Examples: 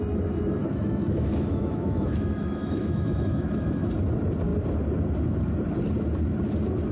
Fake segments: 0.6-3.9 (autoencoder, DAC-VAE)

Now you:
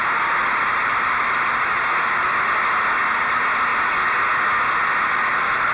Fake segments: 0.4-2.7 (vocoder, BigVGAN v2); 3.7-4.2

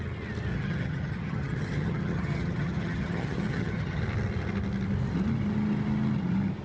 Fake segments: 0.5-4.0 (vocoder, HiFi-GAN)

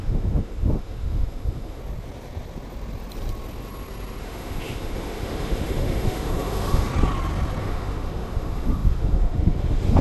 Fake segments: 0.0-1.8 (autoencoder, DAC-VAE); 4.2-6.9; 7.6-10.0

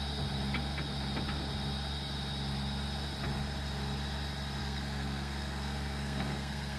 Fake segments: 4.6-6.8 (codec, SNAC)

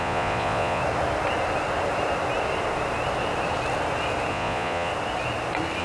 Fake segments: 0.0-0.8 (vocoder, Vocos); 4.3-4.9

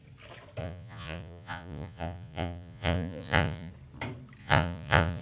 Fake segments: 0.6-3.7 (vocoder, Vocos); 4.4-5.2